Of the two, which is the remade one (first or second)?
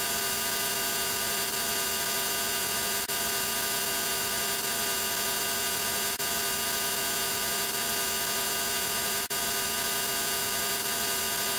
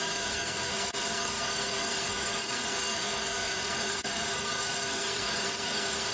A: second